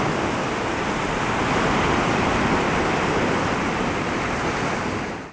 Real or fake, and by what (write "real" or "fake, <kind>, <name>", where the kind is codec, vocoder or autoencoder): real